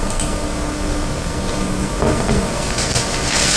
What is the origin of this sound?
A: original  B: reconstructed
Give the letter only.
B